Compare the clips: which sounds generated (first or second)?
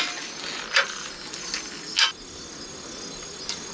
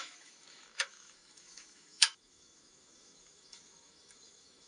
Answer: second